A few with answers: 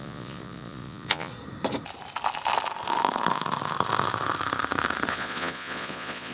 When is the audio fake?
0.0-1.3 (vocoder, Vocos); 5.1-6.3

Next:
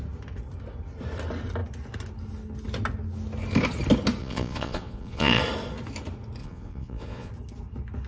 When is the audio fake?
4.2-5.4 (vocoder, Vocos); 6.4-7.3

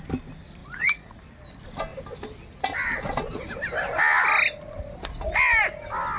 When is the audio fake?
0.6-1.2 (vocoder, Vocos)

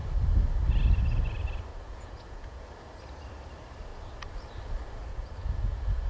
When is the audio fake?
1.7-2.6 (vocoder, Vocos); 5.1-6.1